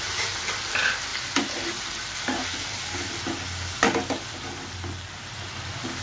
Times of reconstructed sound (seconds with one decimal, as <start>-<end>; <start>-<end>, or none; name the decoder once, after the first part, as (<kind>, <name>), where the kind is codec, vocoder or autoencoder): none